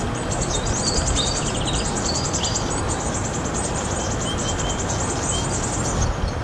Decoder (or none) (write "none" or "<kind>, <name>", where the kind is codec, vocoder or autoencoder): none